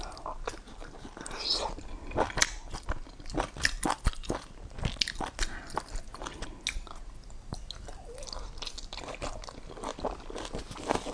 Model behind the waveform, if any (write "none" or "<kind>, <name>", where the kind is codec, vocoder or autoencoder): none